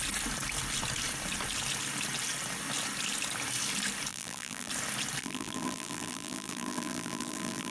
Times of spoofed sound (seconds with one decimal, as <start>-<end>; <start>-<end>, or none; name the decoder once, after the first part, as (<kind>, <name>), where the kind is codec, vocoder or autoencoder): 4.1-4.7 (vocoder, BigVGAN v2); 5.2-7.7

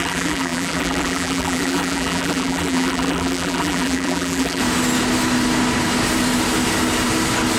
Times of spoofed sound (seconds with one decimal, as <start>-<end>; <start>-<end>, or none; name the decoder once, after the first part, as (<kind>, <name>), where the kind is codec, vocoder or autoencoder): 0.0-4.6 (vocoder, BigVGAN v2)

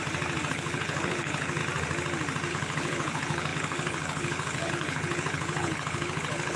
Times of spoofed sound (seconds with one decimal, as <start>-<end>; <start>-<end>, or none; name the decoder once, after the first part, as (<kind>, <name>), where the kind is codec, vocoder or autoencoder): 0.5-1.6 (codec, HILCodec); 2.5-6.6

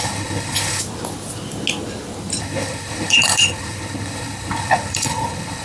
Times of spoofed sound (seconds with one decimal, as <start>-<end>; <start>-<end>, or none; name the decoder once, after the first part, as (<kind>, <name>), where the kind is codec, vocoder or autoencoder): 0.0-0.8 (codec, HILCodec); 2.4-5.6

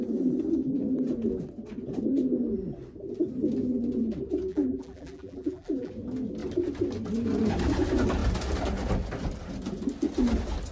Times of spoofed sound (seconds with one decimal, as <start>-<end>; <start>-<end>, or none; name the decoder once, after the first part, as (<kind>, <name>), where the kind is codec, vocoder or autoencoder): 4.5-5.9 (vocoder, BigVGAN v2)

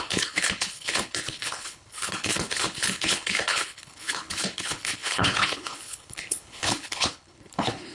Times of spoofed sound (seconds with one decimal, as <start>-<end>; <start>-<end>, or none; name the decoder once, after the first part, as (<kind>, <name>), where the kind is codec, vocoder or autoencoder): 0.0-7.9 (codec, HILCodec)

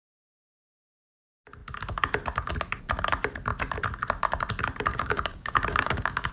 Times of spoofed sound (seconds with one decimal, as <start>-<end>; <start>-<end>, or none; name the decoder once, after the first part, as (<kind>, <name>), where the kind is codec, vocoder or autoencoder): 4.9-6.3 (codec, DAC)